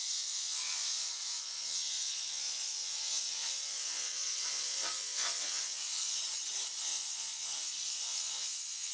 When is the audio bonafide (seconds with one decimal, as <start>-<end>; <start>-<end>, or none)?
6.2-6.8